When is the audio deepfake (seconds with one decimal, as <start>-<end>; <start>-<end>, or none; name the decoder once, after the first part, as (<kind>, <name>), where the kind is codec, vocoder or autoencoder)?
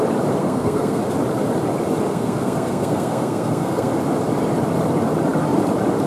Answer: 0.4-1.0 (codec, SNAC); 2.1-3.9